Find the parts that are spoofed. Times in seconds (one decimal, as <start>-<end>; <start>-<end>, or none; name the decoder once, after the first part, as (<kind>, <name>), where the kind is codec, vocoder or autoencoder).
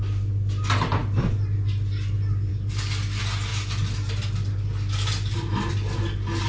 none